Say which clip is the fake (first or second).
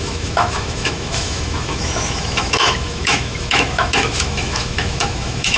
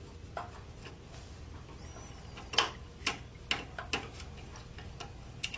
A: first